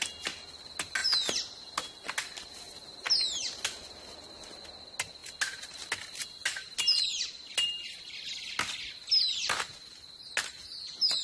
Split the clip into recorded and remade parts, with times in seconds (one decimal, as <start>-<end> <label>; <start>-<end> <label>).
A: 0.0-11.2 recorded